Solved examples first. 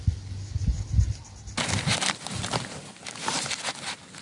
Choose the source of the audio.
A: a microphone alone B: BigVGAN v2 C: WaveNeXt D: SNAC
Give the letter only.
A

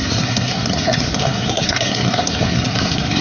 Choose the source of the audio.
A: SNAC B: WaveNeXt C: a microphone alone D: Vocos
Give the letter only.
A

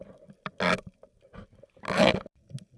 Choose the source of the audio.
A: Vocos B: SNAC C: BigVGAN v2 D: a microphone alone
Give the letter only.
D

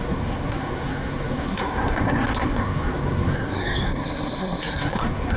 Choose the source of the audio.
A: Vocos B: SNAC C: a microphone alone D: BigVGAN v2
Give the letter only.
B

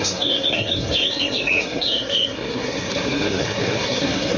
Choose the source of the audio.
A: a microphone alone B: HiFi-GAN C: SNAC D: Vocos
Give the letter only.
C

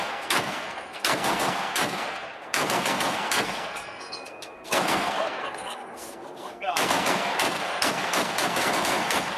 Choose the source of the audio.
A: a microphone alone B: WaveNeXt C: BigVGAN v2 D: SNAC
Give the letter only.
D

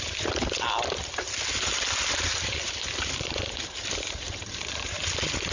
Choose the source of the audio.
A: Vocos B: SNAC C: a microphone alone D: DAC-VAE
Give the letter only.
C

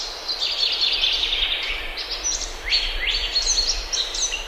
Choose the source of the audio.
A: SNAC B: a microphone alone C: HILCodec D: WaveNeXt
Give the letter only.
B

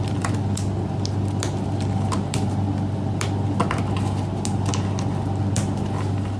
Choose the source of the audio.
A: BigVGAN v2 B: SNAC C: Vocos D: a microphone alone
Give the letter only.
D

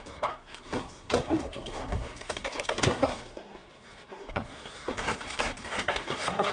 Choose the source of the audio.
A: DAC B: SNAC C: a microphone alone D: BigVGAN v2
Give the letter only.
B